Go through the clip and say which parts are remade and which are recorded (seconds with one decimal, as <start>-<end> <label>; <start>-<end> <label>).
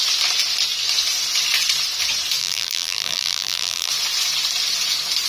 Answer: 0.0-2.4 recorded; 2.4-3.9 remade; 3.9-5.3 recorded